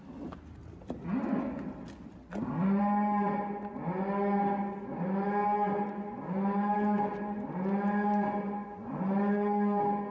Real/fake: real